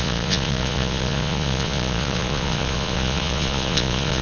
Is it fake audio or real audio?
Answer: fake